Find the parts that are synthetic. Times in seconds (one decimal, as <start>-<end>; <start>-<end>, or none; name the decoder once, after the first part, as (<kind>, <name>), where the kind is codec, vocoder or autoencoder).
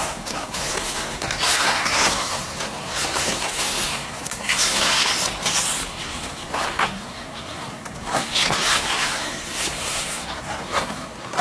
0.0-5.1 (codec, SNAC); 5.9-11.4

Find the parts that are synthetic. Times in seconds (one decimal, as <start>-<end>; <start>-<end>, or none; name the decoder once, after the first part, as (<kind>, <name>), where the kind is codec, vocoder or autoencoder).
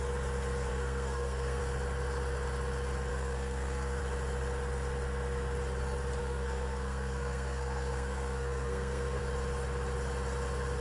0.7-1.6 (codec, SNAC); 3.1-4.0; 6.2-9.2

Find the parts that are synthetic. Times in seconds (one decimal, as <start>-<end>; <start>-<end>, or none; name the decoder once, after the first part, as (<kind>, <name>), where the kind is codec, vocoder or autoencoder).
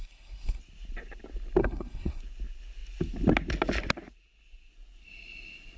0.0-0.6 (codec, SNAC); 1.6-2.2